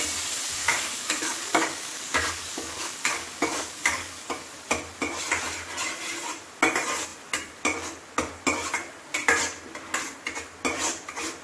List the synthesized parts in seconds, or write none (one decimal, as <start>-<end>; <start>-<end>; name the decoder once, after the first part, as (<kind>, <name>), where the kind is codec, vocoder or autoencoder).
0.6-4.5 (codec, DAC)